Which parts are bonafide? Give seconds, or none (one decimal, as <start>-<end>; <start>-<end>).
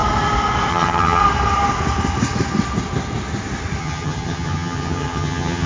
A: 0.0-0.7; 1.2-3.8